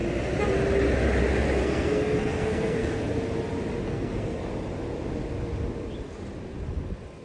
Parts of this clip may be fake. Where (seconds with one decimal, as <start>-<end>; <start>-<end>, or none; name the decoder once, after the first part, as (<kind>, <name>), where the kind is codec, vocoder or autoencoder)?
1.6-3.0 (codec, SNAC); 3.8-4.5